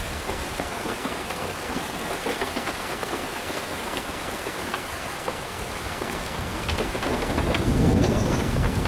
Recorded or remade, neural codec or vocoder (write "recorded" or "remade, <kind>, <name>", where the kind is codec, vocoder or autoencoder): remade, codec, SNAC